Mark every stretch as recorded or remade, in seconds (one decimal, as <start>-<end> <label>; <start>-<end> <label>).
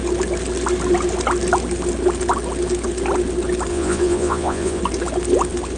0.0-3.7 recorded; 3.7-4.8 remade; 4.8-5.8 recorded